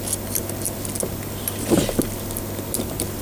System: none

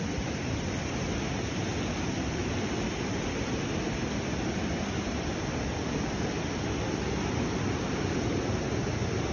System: none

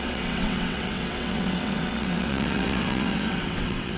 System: vocoder, WaveNeXt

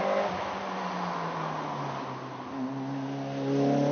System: none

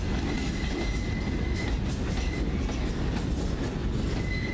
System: none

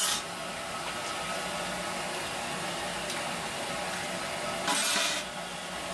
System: none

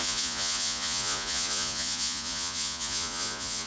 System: vocoder, Vocos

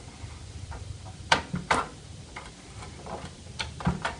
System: vocoder, BigVGAN v2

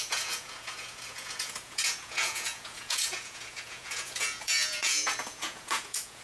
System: vocoder, Vocos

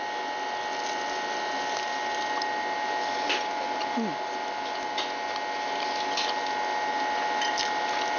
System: none